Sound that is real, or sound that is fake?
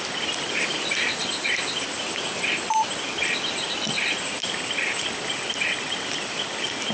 real